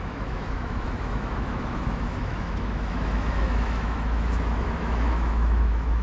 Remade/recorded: remade